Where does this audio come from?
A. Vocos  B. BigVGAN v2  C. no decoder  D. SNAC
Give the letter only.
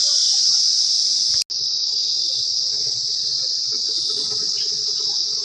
C